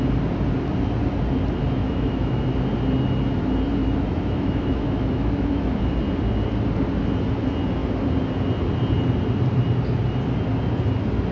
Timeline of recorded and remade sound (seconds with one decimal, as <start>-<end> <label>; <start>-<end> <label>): 0.0-1.8 recorded; 1.8-2.4 remade; 2.4-3.8 recorded; 3.8-5.8 remade; 5.8-11.3 recorded